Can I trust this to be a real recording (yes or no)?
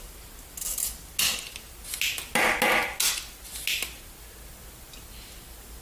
yes